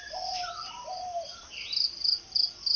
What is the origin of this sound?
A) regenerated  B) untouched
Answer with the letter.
A